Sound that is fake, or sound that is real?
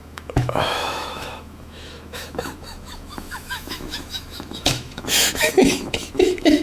fake